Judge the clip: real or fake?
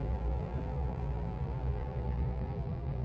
fake